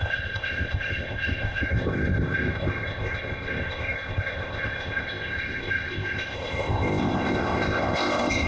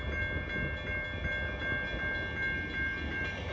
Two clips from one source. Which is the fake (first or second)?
first